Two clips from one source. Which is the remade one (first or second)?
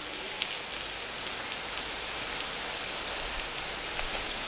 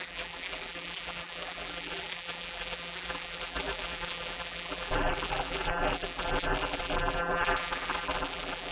second